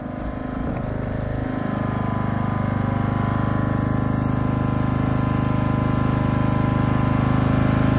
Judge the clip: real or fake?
real